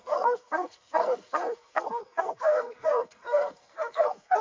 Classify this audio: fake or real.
fake